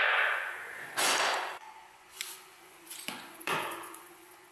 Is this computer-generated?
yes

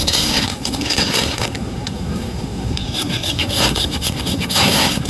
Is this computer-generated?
yes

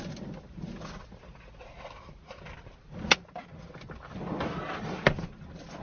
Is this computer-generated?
no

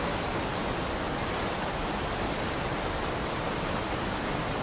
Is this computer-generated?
no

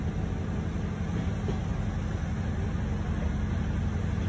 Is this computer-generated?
no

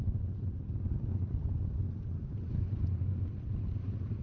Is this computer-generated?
no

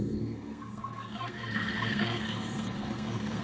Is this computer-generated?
yes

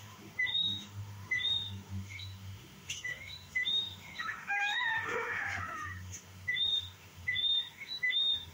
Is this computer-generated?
yes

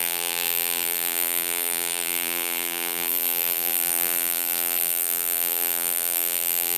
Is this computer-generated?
yes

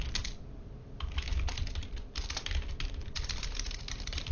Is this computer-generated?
no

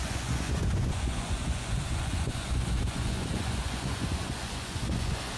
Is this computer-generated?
yes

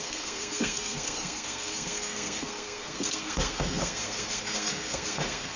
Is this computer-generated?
yes